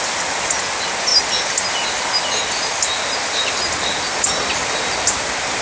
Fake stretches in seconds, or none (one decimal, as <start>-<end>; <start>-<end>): none